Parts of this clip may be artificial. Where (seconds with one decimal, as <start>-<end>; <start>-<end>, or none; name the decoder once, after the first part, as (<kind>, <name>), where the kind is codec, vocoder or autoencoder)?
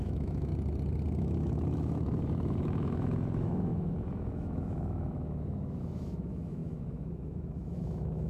0.0-0.5 (autoencoder, DAC-VAE); 1.2-8.3